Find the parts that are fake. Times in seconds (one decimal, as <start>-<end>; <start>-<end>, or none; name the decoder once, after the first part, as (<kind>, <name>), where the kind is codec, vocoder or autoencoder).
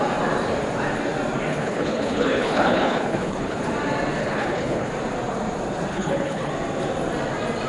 1.5-3.6 (codec, HILCodec); 4.2-4.9; 5.9-6.5